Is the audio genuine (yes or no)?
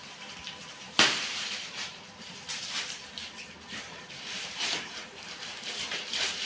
no